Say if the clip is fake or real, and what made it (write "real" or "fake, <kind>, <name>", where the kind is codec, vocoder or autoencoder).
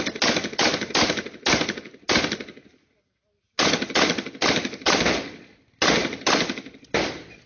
real